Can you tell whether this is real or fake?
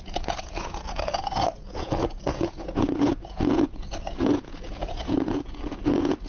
fake